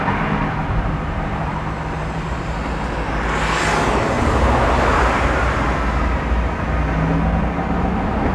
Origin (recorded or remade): recorded